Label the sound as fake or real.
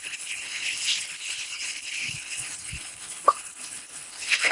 fake